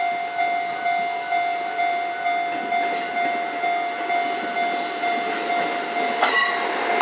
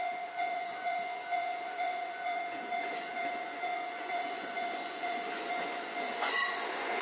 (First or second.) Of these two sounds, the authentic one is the first